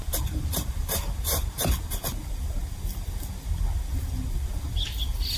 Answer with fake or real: real